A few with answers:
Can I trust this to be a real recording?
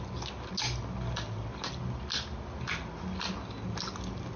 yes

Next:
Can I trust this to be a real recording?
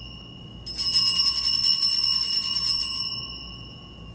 yes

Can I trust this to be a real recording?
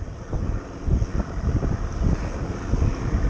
yes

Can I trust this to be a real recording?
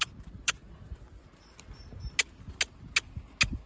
yes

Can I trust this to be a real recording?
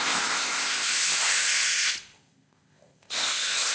no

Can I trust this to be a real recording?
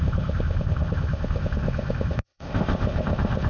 no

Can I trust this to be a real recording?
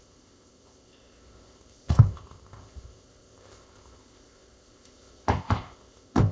no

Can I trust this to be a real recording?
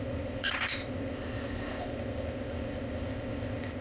no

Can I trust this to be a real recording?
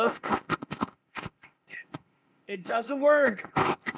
no